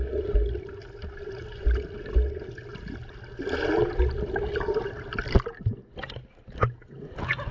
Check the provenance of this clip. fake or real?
real